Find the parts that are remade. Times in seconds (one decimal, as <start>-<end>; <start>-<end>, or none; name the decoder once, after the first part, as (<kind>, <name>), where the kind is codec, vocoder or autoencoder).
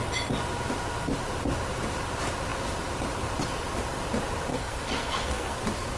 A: 4.5-5.6 (codec, SNAC)